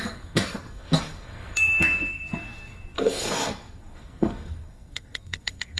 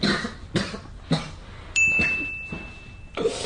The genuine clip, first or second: second